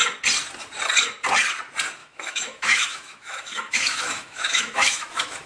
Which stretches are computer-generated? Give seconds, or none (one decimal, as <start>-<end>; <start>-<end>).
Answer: 2.0-5.5